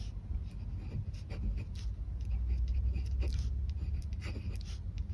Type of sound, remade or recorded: recorded